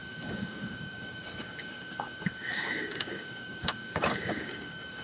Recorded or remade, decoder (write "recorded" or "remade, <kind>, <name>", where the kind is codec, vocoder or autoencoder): remade, codec, DAC